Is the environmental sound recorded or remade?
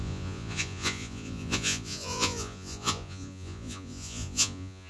remade